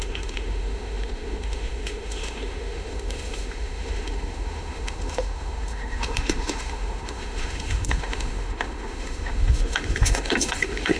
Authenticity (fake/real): fake